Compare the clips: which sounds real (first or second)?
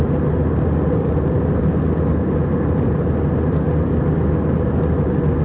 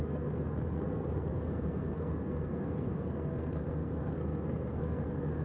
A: first